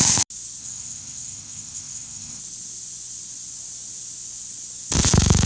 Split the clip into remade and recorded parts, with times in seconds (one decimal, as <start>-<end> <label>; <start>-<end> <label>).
0.0-0.6 recorded; 0.6-2.4 remade; 2.4-5.5 recorded